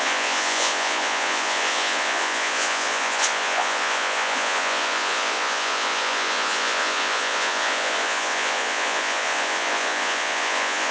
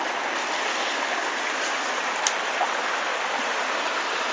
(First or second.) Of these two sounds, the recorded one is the second